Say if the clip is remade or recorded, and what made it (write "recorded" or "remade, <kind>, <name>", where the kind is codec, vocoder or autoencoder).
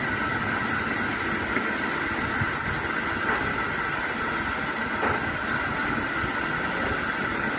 recorded